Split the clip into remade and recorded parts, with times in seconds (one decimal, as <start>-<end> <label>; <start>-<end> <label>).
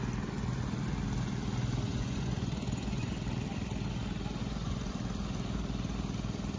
0.0-1.9 recorded; 1.9-3.1 remade; 3.1-4.4 recorded; 4.4-4.9 remade; 4.9-6.6 recorded